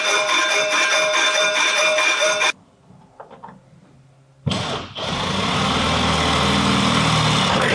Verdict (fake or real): real